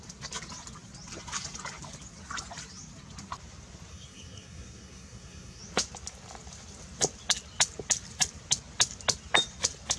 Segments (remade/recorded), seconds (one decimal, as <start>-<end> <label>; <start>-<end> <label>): 0.0-3.9 recorded; 3.9-5.6 remade; 5.6-10.0 recorded